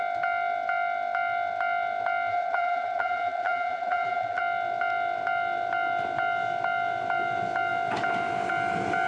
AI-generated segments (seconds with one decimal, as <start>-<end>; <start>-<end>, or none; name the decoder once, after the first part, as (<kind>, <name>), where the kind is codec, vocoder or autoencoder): 2.3-4.4 (vocoder, BigVGAN v2)